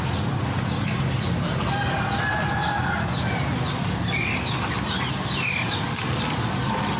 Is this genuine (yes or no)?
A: yes